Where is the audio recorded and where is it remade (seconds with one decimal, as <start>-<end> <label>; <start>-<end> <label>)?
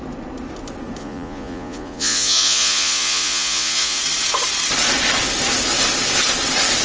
0.0-1.0 recorded; 1.0-4.0 remade; 4.0-6.8 recorded